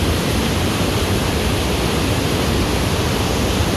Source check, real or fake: real